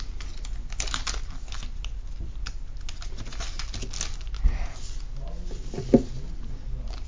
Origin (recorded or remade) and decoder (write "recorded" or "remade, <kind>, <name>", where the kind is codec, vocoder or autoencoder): recorded